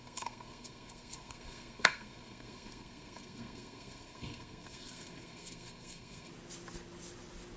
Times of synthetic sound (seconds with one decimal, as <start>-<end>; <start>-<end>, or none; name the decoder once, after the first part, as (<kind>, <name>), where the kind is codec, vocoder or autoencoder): 0.0-6.3 (codec, SNAC)